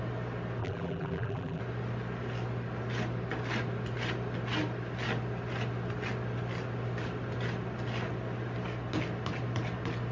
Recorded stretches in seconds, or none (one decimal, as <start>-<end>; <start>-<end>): 0.0-0.6; 1.6-10.1